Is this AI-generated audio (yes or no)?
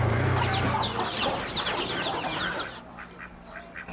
no